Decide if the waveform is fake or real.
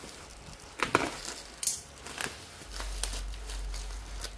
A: real